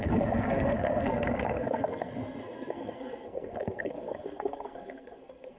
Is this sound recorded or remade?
remade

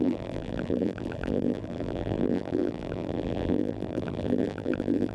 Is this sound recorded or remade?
remade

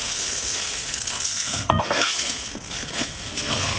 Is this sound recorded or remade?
remade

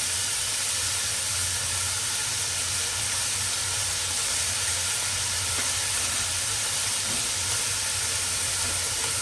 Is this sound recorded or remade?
recorded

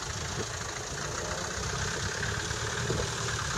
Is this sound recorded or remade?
recorded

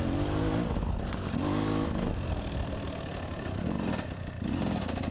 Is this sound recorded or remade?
recorded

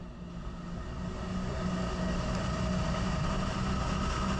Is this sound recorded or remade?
recorded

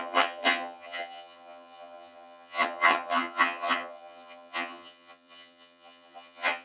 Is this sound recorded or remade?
remade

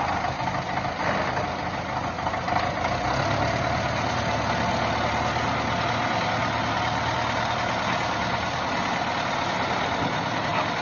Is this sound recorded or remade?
recorded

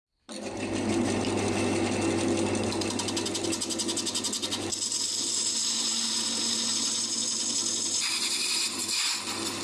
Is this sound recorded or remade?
recorded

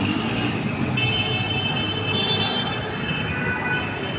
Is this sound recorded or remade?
recorded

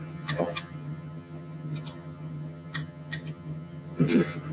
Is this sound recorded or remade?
remade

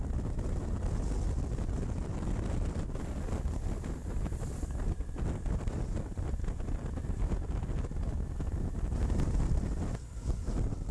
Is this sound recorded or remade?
recorded